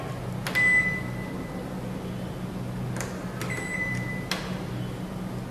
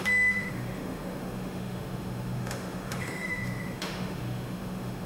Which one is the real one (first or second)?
first